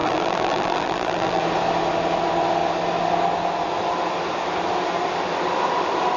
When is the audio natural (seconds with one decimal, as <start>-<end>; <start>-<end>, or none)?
1.4-6.2